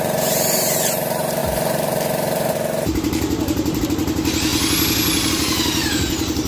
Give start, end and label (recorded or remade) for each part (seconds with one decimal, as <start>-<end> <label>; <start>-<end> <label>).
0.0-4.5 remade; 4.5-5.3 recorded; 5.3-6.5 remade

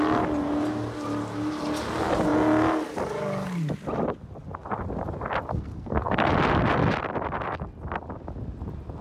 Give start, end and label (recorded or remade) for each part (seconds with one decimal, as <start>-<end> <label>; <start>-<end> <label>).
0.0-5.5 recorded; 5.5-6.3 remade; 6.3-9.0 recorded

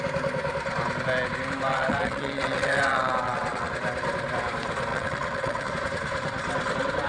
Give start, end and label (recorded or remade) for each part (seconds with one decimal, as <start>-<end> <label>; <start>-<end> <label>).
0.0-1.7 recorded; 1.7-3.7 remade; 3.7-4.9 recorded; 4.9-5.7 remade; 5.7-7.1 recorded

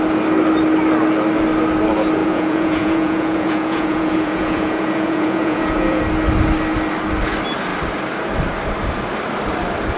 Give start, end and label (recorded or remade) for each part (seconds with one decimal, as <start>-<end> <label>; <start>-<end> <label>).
0.0-2.2 recorded; 2.2-6.0 remade; 6.0-10.0 recorded

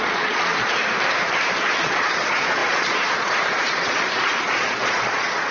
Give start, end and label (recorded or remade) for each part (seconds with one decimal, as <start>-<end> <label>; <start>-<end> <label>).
0.0-0.8 remade; 0.8-1.6 recorded; 1.6-5.5 remade

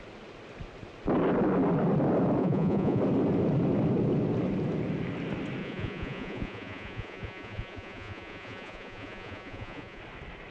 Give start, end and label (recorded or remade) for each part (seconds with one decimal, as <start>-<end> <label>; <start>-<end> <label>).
0.0-2.4 recorded; 2.4-3.0 remade; 3.0-5.6 recorded; 5.6-10.0 remade; 10.0-10.5 recorded

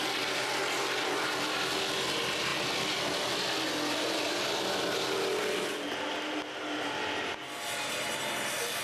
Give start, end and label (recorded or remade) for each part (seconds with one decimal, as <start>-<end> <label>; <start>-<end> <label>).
0.0-8.8 recorded